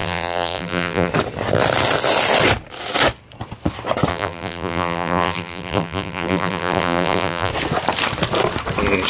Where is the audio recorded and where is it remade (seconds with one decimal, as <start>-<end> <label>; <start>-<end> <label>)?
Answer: 0.0-1.1 remade; 1.1-4.1 recorded; 4.1-7.5 remade; 7.5-9.1 recorded